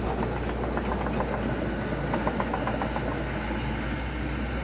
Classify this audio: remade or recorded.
recorded